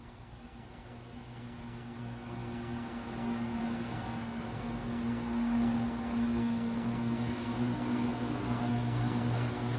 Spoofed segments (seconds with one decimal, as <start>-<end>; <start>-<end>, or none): 0.0-9.8